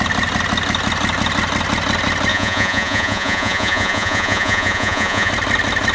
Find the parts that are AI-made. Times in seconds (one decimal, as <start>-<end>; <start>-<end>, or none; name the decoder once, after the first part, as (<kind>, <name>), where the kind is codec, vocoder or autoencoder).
2.3-5.3 (vocoder, Vocos)

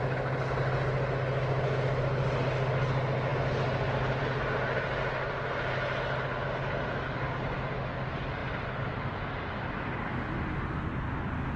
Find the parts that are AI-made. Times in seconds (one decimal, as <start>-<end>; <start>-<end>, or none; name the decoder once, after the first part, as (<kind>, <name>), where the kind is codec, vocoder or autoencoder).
none

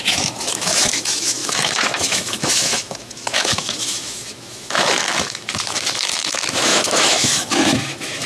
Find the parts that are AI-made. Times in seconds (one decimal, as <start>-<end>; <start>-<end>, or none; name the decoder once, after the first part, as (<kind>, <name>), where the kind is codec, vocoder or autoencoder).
0.0-8.3 (autoencoder, DAC-VAE)